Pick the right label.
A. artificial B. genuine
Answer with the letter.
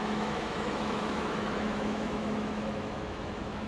A